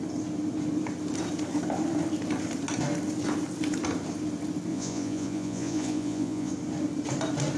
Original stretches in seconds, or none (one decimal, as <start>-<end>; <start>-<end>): 0.0-4.7; 6.5-7.6